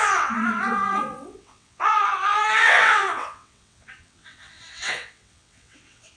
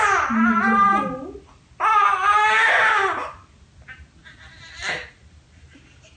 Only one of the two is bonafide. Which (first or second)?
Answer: second